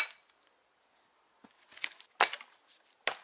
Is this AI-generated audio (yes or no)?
no